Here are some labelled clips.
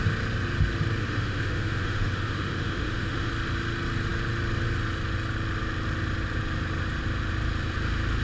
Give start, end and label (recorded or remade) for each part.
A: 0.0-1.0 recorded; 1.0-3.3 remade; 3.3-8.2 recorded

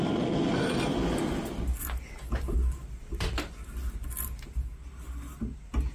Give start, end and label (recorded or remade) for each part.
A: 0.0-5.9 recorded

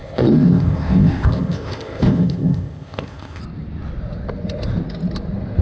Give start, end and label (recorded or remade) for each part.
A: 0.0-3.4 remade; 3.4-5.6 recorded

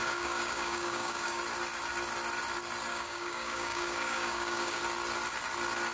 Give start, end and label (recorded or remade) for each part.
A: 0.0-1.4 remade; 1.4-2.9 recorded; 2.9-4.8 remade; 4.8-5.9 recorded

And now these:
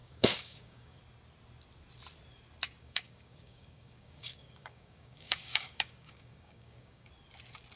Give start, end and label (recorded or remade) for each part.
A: 0.0-1.0 remade; 1.0-2.8 recorded; 2.8-7.1 remade; 7.1-7.8 recorded

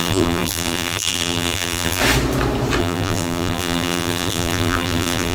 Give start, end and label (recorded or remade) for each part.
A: 0.0-2.0 remade; 2.0-2.8 recorded; 2.8-5.3 remade

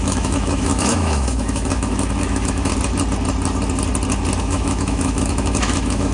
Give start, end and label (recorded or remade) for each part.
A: 0.0-2.7 remade; 2.7-4.4 recorded; 4.4-6.1 remade

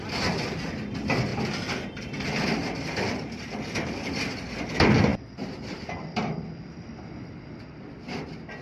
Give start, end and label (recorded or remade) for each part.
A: 0.0-1.3 recorded; 1.3-4.1 remade; 4.1-5.1 recorded; 5.1-7.0 remade; 7.0-8.6 recorded